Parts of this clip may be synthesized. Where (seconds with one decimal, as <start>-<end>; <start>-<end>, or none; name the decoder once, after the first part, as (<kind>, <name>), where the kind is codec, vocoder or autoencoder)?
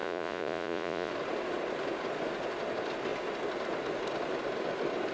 0.0-1.1 (vocoder, Vocos)